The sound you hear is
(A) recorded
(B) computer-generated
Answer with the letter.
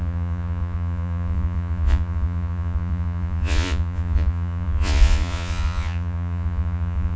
B